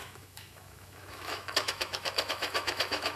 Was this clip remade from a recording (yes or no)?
yes